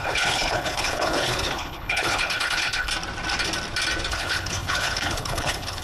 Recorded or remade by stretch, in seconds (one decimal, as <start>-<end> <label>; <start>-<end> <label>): 0.0-2.9 remade; 2.9-4.1 recorded; 4.1-5.8 remade